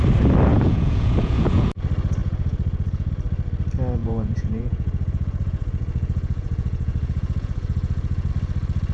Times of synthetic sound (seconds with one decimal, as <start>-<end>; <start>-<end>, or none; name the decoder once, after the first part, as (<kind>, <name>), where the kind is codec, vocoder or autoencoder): 0.5-1.7 (vocoder, Vocos); 2.2-3.1; 4.0-8.3